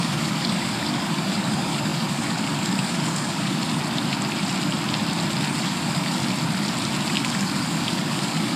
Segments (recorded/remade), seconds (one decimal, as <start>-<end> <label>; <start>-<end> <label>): 0.0-3.6 remade; 3.6-5.6 recorded; 5.6-6.2 remade; 6.2-7.1 recorded; 7.1-8.6 remade